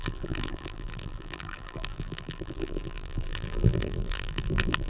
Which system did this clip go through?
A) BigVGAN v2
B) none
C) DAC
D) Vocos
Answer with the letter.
A